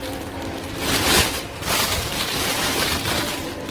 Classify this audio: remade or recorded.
recorded